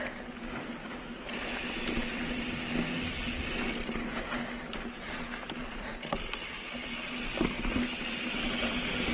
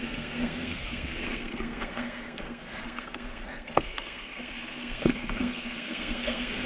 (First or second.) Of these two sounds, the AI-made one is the second